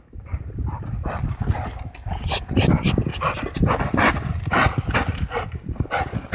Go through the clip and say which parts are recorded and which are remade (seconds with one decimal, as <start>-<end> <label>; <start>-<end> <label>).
0.0-6.3 recorded